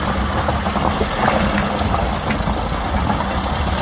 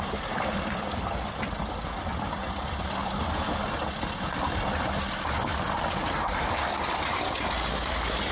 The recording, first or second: first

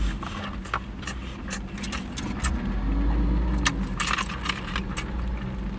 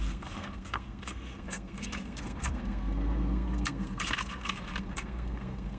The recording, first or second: first